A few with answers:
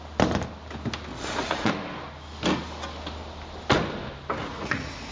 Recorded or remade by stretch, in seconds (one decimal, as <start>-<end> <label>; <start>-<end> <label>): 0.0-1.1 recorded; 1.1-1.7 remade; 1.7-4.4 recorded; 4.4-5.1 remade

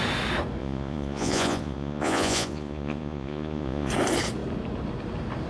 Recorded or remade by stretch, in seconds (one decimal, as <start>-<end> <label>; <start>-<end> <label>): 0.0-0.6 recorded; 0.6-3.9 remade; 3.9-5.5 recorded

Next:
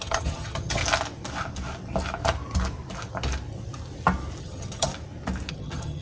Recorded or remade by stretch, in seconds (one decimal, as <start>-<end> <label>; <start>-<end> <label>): 0.0-0.8 remade; 0.8-4.4 recorded; 4.4-4.9 remade; 4.9-5.5 recorded; 5.5-6.0 remade